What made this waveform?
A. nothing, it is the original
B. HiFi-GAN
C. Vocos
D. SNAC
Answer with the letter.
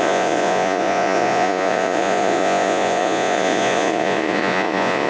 C